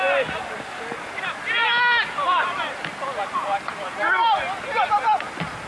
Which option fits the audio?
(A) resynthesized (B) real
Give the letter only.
B